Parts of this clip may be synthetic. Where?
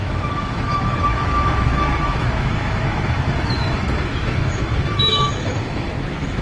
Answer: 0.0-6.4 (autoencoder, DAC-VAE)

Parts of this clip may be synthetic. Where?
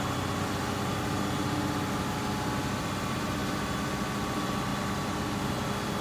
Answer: none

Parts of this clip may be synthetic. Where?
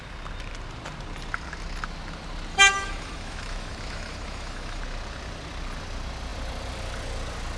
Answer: 2.5-4.8 (autoencoder, DAC-VAE)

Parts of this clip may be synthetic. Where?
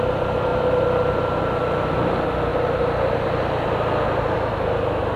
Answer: none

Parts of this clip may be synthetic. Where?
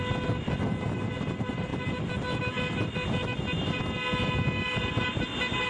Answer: none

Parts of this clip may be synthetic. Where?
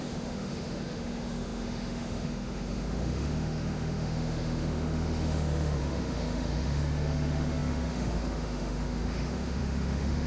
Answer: 0.0-10.3 (autoencoder, DAC-VAE)